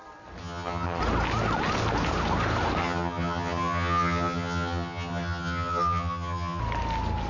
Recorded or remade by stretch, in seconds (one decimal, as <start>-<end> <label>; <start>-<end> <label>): 0.0-0.4 recorded; 0.4-1.0 remade; 1.0-2.8 recorded; 2.8-6.6 remade; 6.6-7.3 recorded